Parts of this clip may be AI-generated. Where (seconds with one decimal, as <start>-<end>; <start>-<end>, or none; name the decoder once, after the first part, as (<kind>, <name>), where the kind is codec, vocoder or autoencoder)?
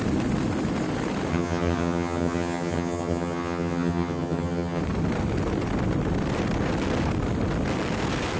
1.3-4.8 (vocoder, HiFi-GAN)